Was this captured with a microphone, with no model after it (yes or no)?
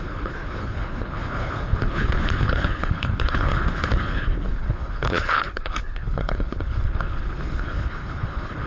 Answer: no